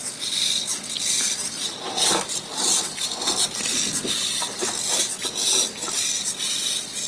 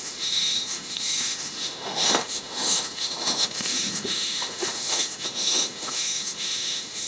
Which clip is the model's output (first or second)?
second